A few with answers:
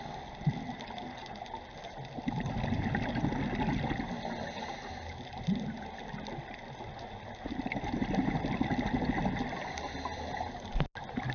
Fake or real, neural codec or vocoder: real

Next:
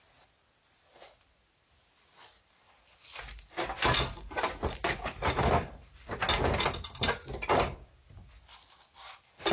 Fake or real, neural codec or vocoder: real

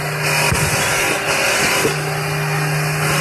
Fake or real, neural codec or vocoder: real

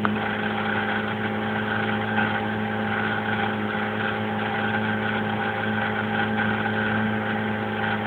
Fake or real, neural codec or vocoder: real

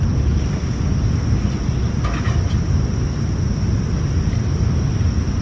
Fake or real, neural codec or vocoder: real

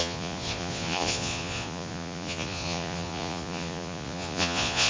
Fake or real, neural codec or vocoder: fake, vocoder, Vocos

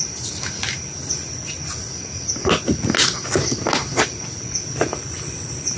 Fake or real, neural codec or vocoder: real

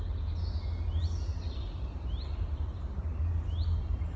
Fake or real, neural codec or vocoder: real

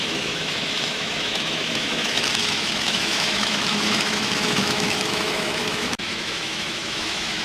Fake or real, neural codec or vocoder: fake, autoencoder, DAC-VAE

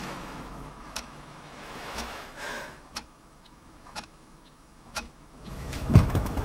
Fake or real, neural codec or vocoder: fake, autoencoder, DAC-VAE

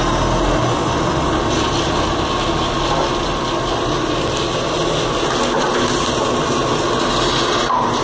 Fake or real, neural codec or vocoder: real